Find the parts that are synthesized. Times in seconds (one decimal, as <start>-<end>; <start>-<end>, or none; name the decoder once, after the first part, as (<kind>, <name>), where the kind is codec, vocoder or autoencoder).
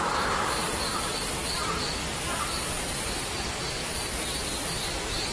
3.8-4.4 (vocoder, BigVGAN v2)